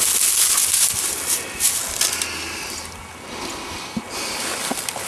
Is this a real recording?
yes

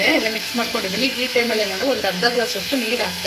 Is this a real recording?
no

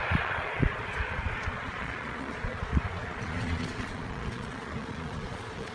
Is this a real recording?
no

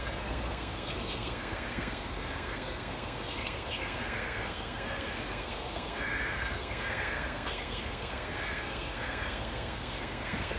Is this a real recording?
no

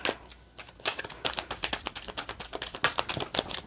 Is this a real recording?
yes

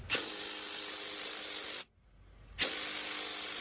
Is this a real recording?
yes